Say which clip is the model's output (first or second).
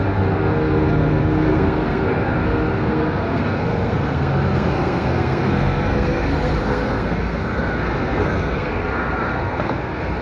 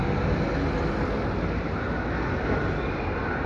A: first